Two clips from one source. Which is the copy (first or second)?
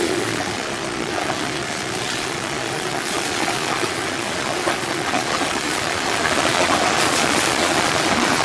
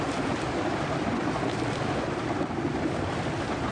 first